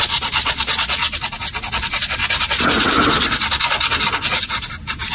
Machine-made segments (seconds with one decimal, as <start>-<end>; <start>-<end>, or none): 0.0-1.0; 1.7-2.2

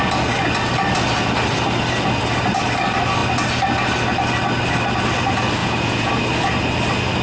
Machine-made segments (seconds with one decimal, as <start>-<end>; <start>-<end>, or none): 5.6-6.1

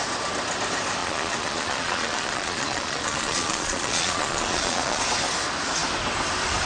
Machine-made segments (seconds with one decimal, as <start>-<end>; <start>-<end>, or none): 1.0-5.0

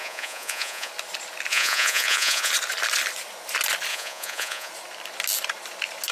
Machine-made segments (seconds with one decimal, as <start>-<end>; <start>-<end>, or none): 0.0-0.9; 1.5-2.5; 3.9-4.7

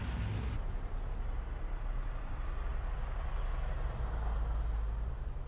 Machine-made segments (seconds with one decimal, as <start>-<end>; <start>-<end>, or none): 2.7-3.3